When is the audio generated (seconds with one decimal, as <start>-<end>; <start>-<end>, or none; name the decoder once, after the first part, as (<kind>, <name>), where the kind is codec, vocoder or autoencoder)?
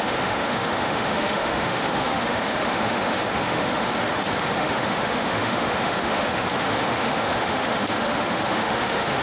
0.0-3.9 (autoencoder, DAC-VAE); 4.6-9.2